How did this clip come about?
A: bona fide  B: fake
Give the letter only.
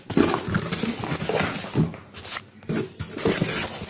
A